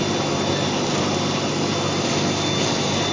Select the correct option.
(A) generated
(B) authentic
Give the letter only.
B